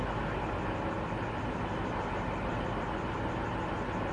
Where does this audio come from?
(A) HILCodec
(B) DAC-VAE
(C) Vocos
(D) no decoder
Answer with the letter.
D